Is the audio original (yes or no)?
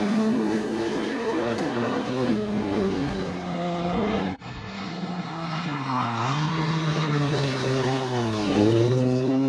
no